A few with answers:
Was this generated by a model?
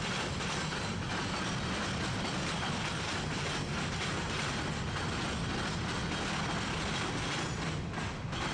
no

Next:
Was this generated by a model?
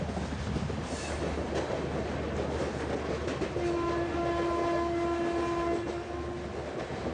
no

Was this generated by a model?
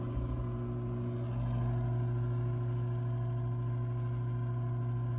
no